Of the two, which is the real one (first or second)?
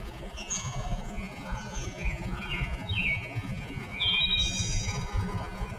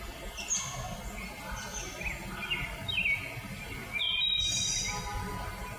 second